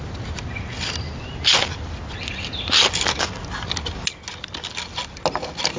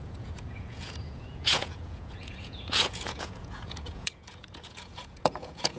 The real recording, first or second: first